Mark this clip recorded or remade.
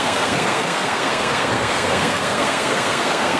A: remade